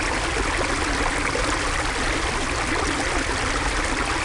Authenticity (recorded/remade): recorded